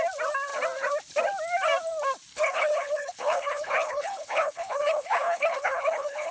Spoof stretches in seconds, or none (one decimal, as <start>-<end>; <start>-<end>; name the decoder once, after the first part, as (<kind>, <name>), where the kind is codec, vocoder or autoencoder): 2.3-6.3 (codec, HILCodec)